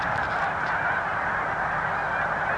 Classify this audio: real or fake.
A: real